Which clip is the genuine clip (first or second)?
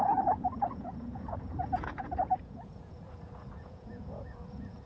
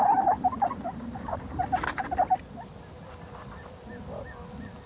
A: second